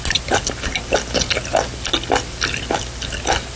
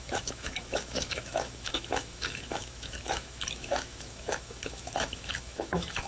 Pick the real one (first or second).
first